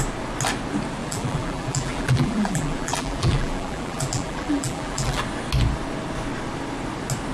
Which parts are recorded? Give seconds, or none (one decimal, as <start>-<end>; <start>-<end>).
0.0-1.0; 5.2-7.3